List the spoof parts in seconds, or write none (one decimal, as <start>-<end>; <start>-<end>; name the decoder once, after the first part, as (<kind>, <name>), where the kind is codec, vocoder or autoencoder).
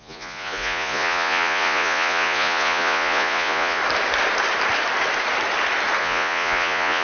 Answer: 0.0-3.8 (vocoder, Vocos); 6.0-7.0